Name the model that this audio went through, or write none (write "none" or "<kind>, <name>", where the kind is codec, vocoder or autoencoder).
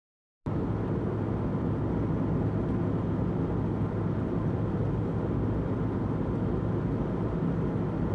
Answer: none